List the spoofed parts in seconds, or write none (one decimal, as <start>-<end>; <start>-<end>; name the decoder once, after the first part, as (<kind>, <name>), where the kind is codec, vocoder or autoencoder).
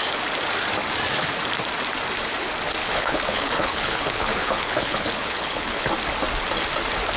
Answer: 2.8-5.9 (codec, HILCodec)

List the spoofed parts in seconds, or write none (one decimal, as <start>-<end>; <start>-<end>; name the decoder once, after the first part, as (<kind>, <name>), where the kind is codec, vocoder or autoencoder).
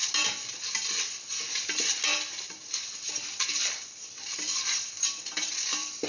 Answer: 2.1-6.1 (vocoder, BigVGAN v2)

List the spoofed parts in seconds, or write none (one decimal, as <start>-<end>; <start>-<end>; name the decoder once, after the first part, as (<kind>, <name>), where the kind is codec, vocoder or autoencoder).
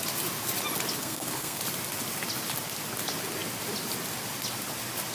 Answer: 1.0-1.6 (codec, SNAC)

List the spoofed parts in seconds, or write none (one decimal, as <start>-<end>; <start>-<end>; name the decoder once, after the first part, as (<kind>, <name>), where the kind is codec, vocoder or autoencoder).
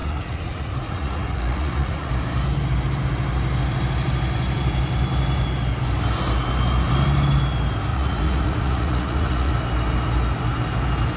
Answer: 0.0-2.1 (vocoder, Vocos); 7.9-9.5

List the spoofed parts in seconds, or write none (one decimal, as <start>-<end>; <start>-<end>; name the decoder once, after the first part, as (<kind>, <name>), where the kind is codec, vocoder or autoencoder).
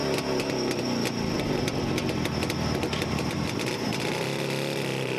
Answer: 3.1-5.2 (vocoder, BigVGAN v2)